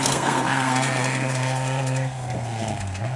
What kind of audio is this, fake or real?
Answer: fake